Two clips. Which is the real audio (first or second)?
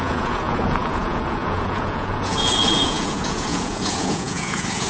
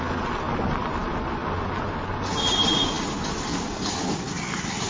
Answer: second